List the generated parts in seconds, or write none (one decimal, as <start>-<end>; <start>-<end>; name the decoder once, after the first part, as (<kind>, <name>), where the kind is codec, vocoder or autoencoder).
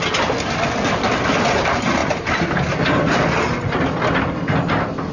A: none